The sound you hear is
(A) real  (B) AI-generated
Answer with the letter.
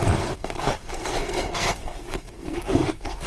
B